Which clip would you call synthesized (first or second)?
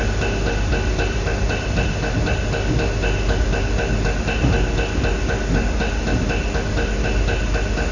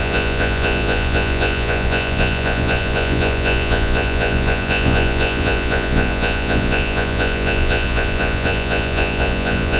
second